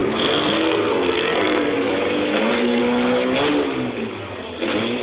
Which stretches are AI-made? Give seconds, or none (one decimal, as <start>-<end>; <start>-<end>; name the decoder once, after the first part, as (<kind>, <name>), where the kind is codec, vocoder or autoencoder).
0.0-1.9 (codec, SNAC); 2.3-2.8